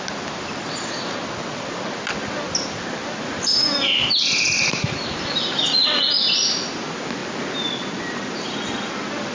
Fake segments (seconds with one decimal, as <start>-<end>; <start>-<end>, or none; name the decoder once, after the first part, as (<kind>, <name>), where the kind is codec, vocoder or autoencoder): none